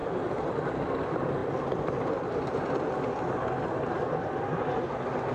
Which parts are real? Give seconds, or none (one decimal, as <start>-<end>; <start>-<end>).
0.7-5.3